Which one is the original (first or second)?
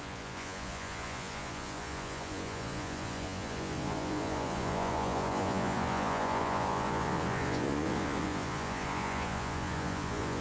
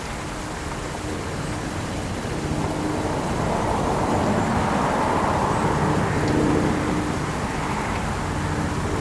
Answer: second